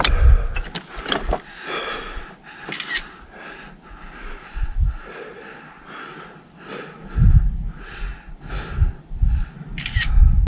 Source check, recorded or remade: recorded